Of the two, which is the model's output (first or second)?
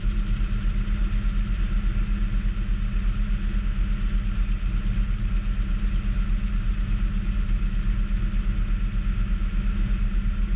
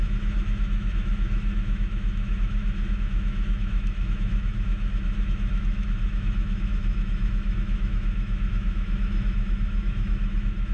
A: second